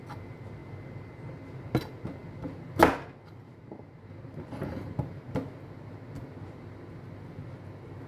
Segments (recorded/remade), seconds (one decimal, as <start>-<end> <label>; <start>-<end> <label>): 0.0-8.1 recorded